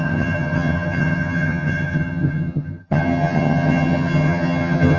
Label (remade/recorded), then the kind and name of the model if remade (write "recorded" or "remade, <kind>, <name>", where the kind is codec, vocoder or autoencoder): remade, vocoder, HiFi-GAN